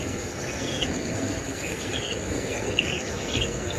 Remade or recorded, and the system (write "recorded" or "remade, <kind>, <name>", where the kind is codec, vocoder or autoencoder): remade, codec, SNAC